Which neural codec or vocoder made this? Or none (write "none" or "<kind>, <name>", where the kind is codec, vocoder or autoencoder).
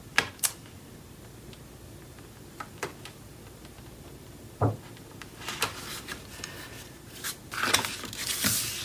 none